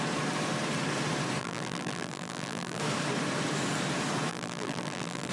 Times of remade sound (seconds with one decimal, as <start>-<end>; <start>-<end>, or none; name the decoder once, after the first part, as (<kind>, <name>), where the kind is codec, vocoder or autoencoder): 1.4-2.8 (vocoder, BigVGAN v2); 4.3-5.3